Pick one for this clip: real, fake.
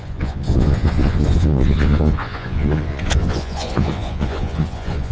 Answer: fake